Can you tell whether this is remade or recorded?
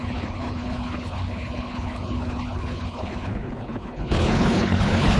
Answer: remade